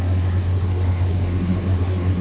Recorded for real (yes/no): no